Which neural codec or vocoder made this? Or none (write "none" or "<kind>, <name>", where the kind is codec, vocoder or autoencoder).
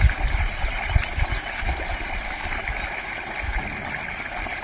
none